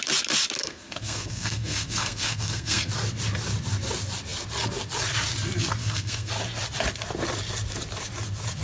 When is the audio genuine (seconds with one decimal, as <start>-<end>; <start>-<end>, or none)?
0.0-0.6; 2.9-5.8; 6.3-8.6